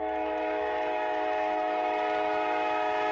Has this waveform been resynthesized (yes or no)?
yes